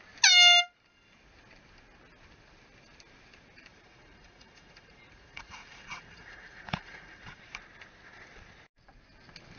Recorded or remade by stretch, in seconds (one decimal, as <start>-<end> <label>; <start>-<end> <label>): 0.0-3.7 recorded; 3.7-7.4 remade; 7.4-9.6 recorded